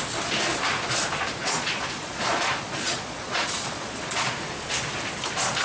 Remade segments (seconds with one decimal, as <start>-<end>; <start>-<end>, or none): 1.4-4.5